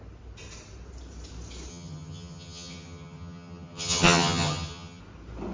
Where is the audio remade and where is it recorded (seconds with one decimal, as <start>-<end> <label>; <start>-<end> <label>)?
0.0-1.7 recorded; 1.7-5.0 remade; 5.0-5.5 recorded